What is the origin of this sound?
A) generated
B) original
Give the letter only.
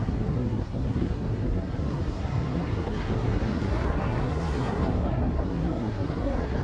A